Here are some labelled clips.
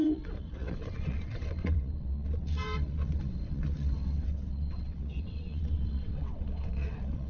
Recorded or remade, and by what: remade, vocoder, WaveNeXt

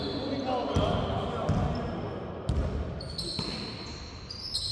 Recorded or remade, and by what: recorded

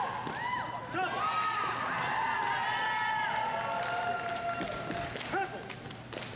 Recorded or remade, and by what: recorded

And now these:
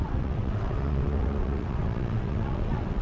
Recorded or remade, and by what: remade, vocoder, WaveNeXt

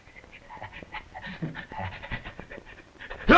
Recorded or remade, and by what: recorded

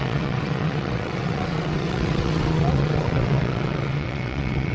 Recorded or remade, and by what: remade, vocoder, WaveNeXt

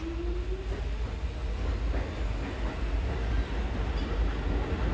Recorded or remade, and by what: recorded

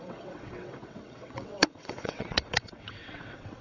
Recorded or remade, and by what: remade, vocoder, WaveNeXt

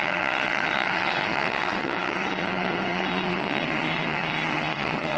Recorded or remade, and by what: remade, vocoder, WaveNeXt